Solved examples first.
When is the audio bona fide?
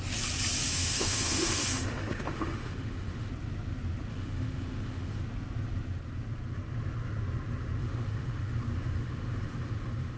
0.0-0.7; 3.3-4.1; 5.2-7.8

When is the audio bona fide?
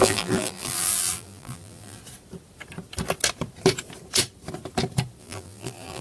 2.0-5.2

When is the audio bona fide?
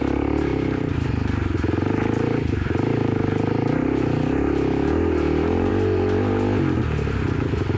0.0-7.8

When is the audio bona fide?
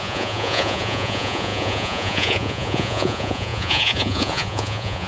none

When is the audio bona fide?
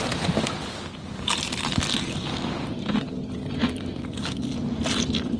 0.0-5.4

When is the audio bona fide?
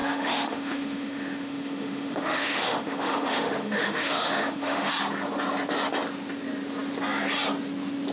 4.9-8.1